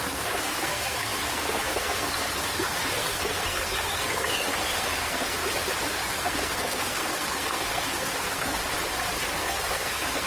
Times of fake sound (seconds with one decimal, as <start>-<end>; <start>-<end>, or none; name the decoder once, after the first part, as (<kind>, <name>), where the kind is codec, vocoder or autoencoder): 0.0-5.4 (codec, SNAC); 5.9-8.6; 9.3-10.3